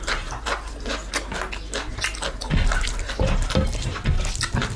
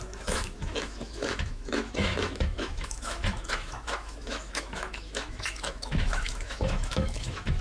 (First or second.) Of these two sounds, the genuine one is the first